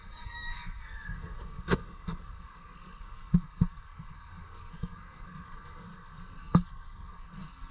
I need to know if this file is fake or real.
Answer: fake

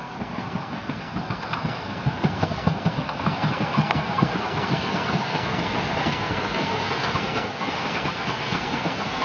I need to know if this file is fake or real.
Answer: fake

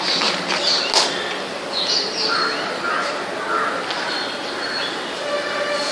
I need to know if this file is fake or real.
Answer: real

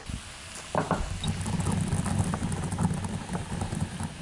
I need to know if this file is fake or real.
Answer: real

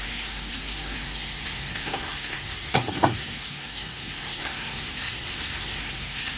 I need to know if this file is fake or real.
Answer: fake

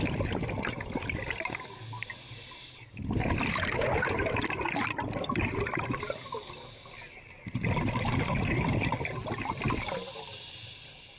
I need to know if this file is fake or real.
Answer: real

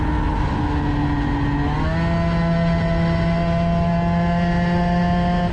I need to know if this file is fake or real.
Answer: real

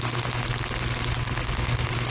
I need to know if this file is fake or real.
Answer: real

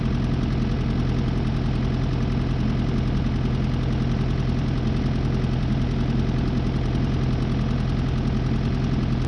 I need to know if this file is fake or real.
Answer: real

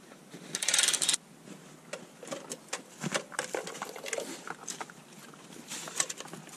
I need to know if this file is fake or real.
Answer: real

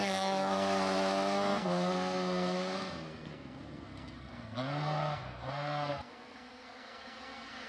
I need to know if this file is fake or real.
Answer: fake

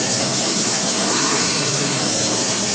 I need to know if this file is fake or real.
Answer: fake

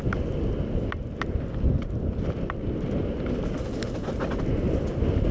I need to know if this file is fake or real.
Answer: real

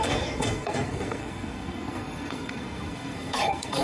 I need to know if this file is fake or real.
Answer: fake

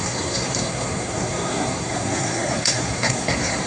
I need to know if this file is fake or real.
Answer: fake